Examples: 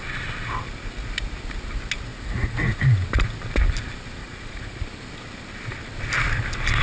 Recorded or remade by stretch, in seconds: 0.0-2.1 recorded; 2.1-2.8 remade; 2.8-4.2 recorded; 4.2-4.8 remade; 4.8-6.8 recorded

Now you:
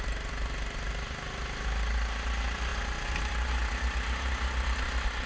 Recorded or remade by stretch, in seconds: 0.0-5.3 recorded

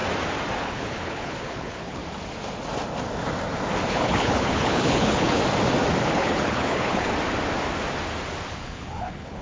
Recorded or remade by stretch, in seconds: 0.0-0.6 recorded; 0.6-2.0 remade; 2.0-3.9 recorded; 3.9-5.4 remade; 5.4-6.0 recorded; 6.0-7.1 remade; 7.1-8.5 recorded; 8.5-9.4 remade

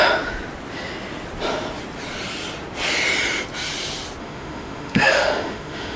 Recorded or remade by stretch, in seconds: 0.0-4.2 recorded; 4.2-6.0 remade

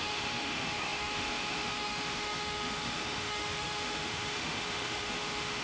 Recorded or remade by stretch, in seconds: 0.0-5.6 remade

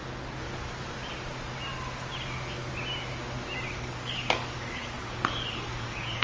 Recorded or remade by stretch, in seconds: 0.0-3.7 recorded; 3.7-6.2 remade